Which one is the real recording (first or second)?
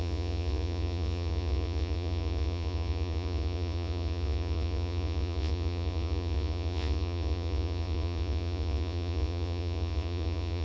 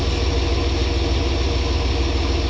second